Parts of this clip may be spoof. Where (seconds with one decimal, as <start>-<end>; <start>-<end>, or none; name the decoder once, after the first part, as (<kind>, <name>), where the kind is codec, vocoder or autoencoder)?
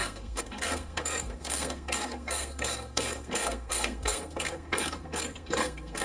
0.0-6.0 (codec, SNAC)